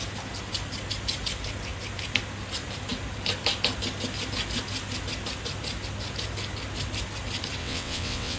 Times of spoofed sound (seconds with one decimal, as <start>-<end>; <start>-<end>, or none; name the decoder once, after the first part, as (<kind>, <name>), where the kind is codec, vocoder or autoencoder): 7.6-8.4 (vocoder, WaveNeXt)